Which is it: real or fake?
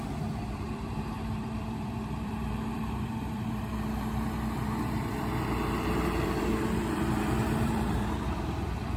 fake